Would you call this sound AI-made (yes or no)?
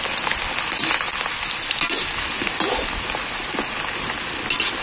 no